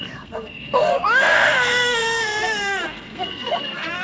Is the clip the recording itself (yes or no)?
no